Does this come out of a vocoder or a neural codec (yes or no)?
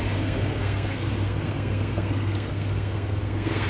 yes